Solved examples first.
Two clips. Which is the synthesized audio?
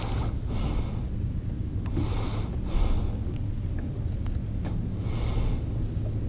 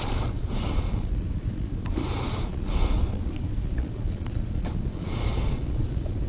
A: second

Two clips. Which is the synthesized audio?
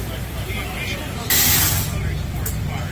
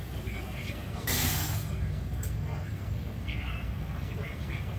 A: second